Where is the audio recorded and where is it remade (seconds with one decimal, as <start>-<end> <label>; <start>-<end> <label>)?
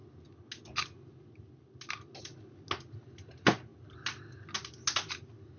0.0-5.6 recorded